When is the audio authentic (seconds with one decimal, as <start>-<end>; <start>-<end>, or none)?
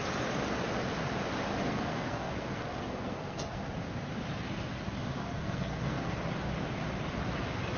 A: 0.0-1.6; 3.6-5.2; 6.1-7.8